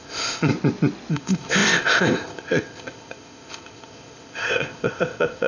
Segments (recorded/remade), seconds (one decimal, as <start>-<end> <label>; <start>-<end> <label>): 0.0-0.5 remade; 0.5-1.1 recorded; 1.1-5.5 remade